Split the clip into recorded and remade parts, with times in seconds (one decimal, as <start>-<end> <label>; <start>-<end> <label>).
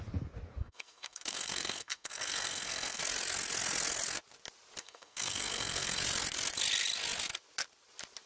0.0-0.6 recorded; 0.6-3.0 remade; 3.0-4.8 recorded; 4.8-6.0 remade; 6.0-8.3 recorded